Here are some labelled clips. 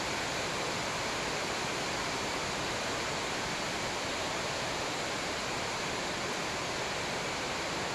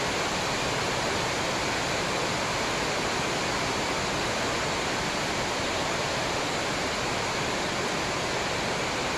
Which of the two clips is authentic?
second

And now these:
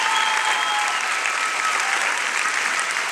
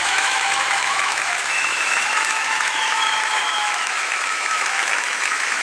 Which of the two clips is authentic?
first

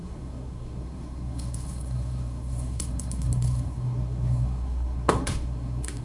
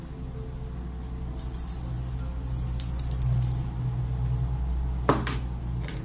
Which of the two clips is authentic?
second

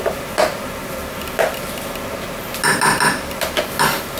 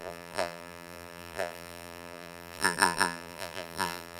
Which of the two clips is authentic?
first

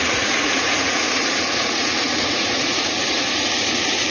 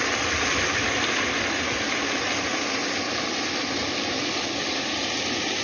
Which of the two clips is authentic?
second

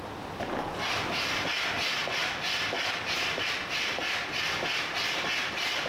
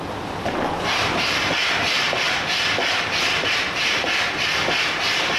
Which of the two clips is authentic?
first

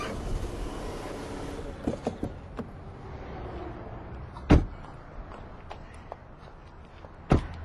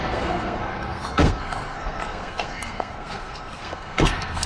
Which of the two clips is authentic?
first